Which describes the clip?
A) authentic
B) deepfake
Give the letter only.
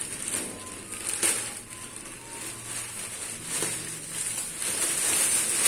A